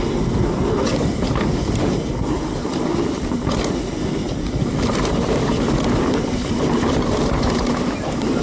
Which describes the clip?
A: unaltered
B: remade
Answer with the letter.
A